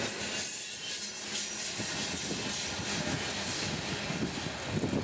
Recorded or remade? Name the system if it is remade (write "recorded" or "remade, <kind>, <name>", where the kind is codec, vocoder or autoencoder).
recorded